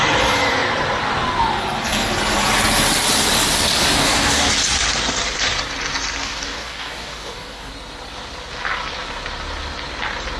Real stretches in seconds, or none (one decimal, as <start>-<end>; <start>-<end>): 0.0-4.0; 4.5-6.2; 7.7-10.4